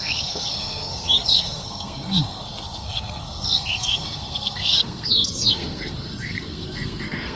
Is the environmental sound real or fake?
fake